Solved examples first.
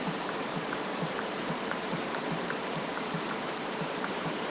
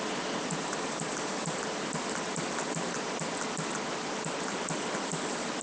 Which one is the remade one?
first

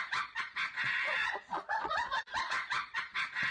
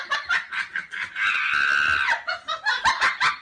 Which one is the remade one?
first